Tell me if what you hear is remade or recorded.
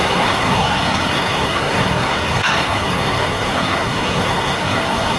remade